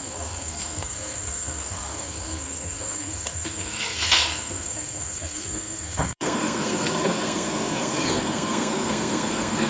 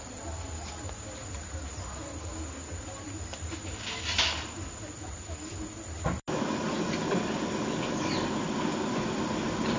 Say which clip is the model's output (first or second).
first